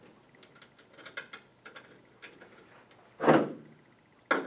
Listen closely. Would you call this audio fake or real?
real